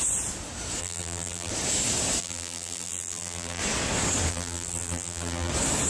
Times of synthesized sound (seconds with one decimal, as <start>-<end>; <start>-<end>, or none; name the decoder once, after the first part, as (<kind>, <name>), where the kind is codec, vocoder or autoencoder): 0.8-1.5 (vocoder, BigVGAN v2); 2.2-3.6; 4.3-5.5